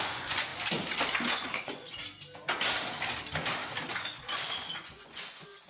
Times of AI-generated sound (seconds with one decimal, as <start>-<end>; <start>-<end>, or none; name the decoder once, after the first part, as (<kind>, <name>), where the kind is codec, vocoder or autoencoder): 0.0-0.5 (vocoder, Vocos); 1.3-2.0; 3.9-5.7